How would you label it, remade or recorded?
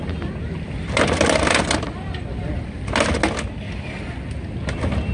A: recorded